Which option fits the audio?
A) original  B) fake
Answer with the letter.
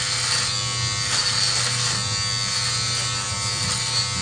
A